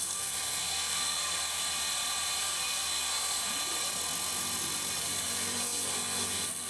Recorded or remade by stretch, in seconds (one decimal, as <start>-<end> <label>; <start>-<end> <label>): 0.0-1.6 remade; 1.6-2.4 recorded; 2.4-3.4 remade; 3.4-5.0 recorded; 5.0-6.7 remade